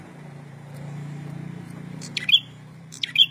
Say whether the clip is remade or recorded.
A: remade